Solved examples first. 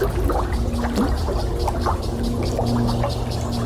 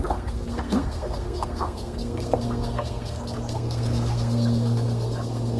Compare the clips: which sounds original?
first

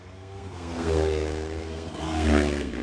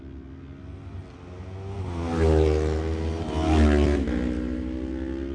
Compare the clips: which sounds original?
second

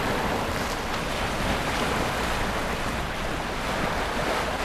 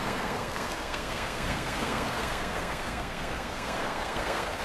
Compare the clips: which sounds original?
first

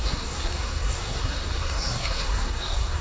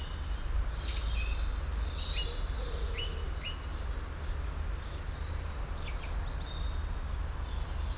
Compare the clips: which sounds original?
second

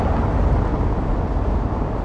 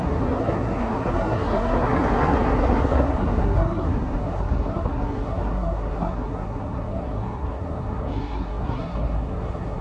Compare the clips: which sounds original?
first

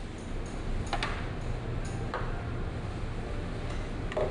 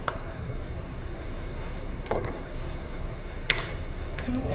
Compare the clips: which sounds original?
first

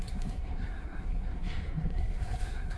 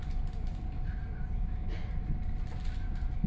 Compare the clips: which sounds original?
second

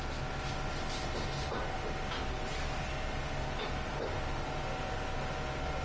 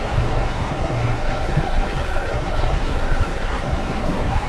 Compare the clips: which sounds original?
first